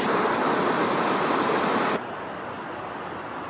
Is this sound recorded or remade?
recorded